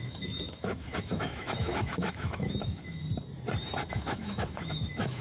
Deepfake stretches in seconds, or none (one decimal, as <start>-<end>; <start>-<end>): 0.0-3.0; 3.9-5.2